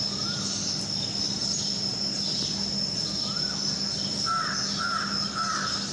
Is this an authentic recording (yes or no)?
yes